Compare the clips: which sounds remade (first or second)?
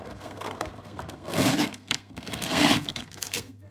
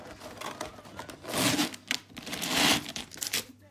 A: first